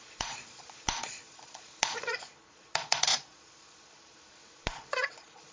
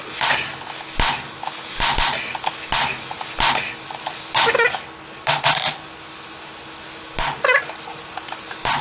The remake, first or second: first